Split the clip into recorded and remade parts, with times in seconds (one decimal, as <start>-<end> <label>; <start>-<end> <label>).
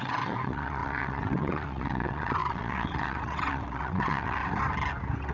0.0-4.4 remade; 4.4-5.3 recorded